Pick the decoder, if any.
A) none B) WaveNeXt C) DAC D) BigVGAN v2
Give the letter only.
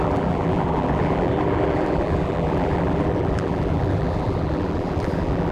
D